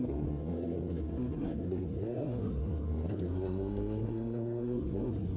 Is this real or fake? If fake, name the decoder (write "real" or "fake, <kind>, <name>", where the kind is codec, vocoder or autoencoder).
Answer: fake, codec, SNAC